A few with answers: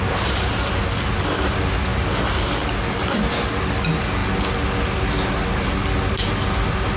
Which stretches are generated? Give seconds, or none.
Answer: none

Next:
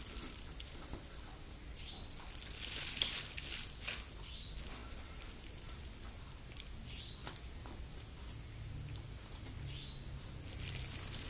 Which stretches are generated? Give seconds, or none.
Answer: none

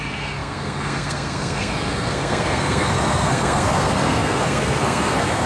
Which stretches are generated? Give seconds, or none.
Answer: 0.0-5.5 (codec, SNAC)

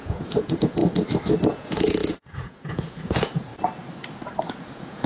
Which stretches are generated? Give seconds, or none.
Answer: 0.0-0.8 (vocoder, Vocos); 1.5-3.5; 4.4-5.1

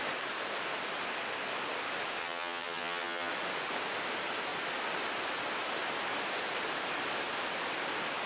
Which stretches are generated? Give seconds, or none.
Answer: 2.2-3.3 (vocoder, HiFi-GAN)

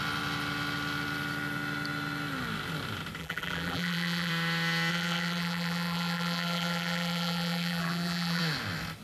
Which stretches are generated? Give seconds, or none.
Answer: 3.2-4.3 (vocoder, BigVGAN v2); 4.9-8.4

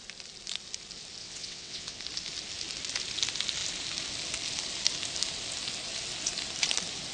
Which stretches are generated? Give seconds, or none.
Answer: 1.2-2.0 (vocoder, WaveNeXt)